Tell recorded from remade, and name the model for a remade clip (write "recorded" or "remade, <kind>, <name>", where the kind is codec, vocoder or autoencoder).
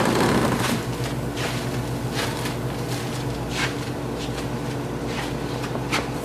recorded